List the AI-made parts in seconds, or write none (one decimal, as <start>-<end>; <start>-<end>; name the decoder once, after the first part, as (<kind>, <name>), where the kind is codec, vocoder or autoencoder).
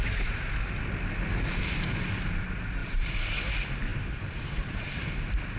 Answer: 2.8-3.5 (vocoder, BigVGAN v2); 3.9-5.1